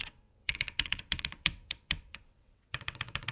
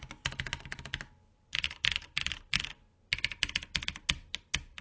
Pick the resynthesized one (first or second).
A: first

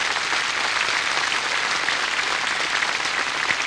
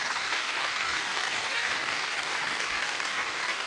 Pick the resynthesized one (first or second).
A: second